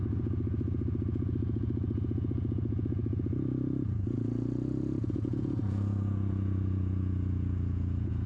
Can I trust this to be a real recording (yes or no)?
no